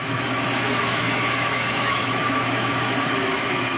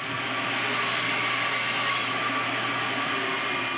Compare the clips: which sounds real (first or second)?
second